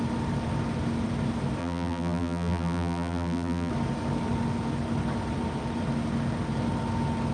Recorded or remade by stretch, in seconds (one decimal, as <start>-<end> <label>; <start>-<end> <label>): 0.0-1.6 recorded; 1.6-3.7 remade; 3.7-7.3 recorded